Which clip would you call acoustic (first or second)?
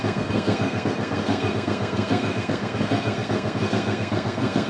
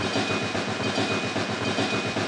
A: second